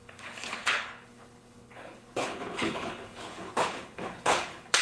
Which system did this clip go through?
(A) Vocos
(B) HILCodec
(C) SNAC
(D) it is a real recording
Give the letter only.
B